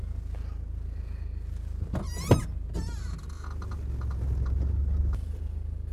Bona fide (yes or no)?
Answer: yes